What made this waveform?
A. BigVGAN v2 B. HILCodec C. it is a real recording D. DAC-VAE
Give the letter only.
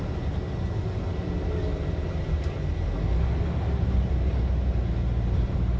C